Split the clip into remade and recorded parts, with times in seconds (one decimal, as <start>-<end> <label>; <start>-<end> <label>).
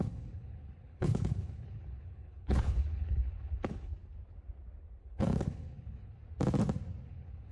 0.0-3.9 remade; 3.9-5.0 recorded; 5.0-6.2 remade; 6.2-7.1 recorded; 7.1-7.5 remade